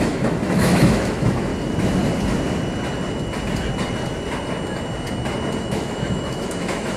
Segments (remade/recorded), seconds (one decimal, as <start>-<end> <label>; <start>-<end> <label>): 0.0-1.5 remade; 1.5-5.6 recorded; 5.6-7.0 remade